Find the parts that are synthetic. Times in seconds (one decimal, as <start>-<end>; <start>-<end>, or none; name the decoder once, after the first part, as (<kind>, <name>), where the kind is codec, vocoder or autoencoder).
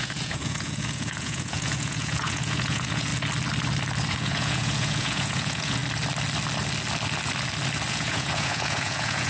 0.0-3.1 (vocoder, Vocos); 4.1-5.8; 7.9-9.3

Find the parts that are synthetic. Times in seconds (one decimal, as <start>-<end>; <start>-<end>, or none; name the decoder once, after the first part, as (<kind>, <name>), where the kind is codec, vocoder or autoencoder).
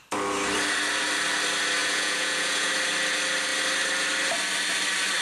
1.8-2.7 (vocoder, Vocos)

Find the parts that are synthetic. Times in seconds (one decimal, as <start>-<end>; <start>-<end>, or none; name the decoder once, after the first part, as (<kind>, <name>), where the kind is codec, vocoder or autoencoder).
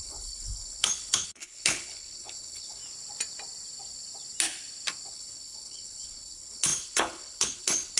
0.0-2.8 (codec, HILCodec); 5.1-8.0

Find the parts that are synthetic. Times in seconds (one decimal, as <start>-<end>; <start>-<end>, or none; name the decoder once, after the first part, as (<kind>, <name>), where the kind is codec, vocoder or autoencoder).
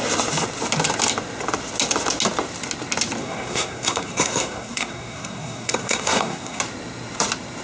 3.2-6.6 (codec, SNAC)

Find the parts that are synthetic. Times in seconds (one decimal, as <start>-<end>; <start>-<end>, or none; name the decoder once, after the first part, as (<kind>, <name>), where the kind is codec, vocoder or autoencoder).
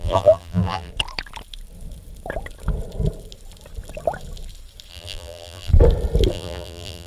0.0-0.9 (vocoder, BigVGAN v2); 4.9-5.7; 6.3-7.1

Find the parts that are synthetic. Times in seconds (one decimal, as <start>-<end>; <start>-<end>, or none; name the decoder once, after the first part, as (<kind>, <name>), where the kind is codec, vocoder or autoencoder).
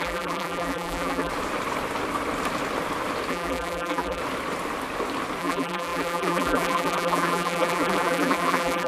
0.0-1.3 (vocoder, BigVGAN v2); 3.3-4.2; 5.4-8.9